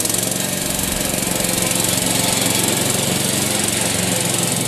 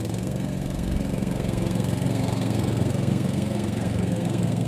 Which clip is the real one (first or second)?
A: first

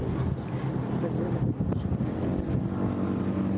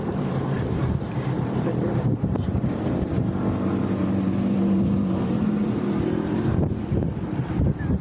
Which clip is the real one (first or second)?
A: first